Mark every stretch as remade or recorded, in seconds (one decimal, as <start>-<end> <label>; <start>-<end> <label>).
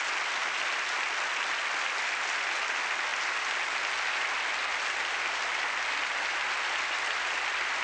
0.0-7.8 recorded